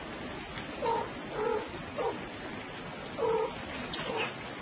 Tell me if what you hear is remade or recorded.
recorded